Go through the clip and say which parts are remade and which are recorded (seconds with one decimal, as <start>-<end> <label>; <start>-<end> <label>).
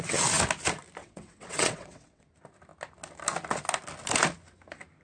0.0-1.0 recorded; 1.0-2.3 remade; 2.3-5.0 recorded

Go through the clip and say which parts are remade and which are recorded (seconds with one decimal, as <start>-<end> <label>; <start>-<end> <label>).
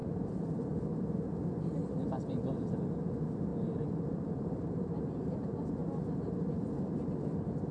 0.0-1.0 remade; 1.0-1.8 recorded; 1.8-2.7 remade; 2.7-3.5 recorded; 3.5-5.8 remade; 5.8-7.7 recorded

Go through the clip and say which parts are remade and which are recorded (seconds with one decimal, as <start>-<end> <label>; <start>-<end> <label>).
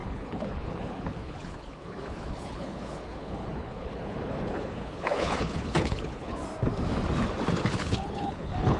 0.0-6.4 remade; 6.4-7.6 recorded; 7.6-8.8 remade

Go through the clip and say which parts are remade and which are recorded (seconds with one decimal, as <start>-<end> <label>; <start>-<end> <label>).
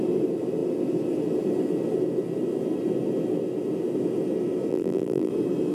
0.0-4.7 recorded; 4.7-5.3 remade; 5.3-5.7 recorded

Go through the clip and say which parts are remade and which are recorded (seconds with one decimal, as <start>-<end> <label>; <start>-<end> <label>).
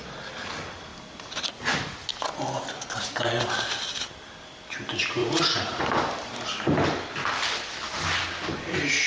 0.0-5.2 recorded; 5.2-5.8 remade; 5.8-9.1 recorded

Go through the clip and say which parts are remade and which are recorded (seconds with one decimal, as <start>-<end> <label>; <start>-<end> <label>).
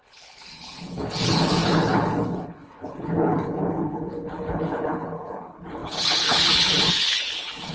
0.0-7.7 remade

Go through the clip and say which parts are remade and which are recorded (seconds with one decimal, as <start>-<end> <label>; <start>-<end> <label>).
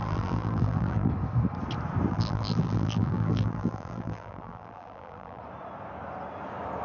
0.0-1.1 remade; 1.1-2.1 recorded; 2.1-5.4 remade; 5.4-6.8 recorded